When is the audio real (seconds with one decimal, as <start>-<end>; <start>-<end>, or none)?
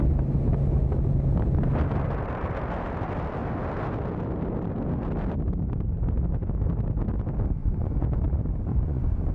0.0-7.6; 8.2-8.7